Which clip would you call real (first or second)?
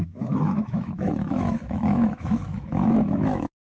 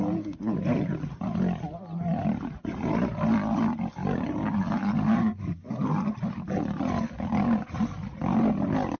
second